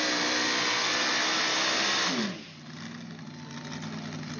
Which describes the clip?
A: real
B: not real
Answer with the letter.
A